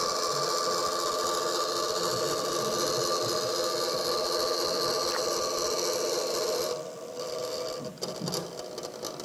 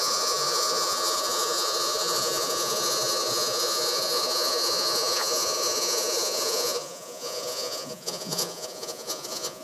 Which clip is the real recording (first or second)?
first